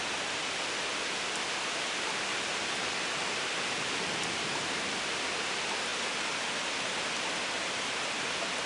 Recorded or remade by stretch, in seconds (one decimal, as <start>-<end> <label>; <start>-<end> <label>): 0.0-8.7 recorded